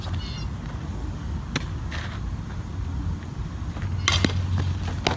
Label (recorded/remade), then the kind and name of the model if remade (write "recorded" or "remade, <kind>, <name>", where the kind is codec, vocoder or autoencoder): recorded